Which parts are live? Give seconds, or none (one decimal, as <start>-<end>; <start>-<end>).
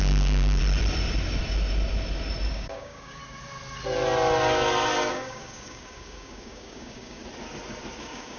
0.6-2.5; 3.2-5.1; 7.2-8.0